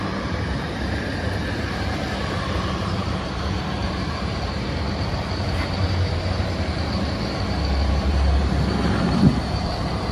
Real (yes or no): no